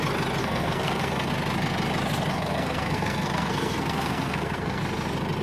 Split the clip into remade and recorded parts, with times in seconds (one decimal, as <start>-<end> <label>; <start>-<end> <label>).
0.0-0.4 recorded; 0.4-1.3 remade; 1.3-2.3 recorded; 2.3-4.8 remade; 4.8-5.4 recorded